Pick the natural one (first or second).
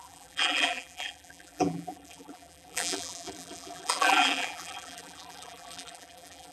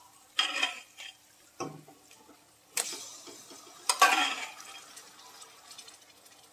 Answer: second